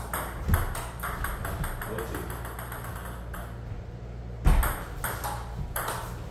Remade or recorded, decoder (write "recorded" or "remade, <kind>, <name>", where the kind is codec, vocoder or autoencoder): recorded